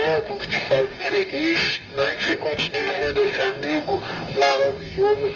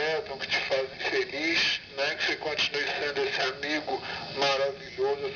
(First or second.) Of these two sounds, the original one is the second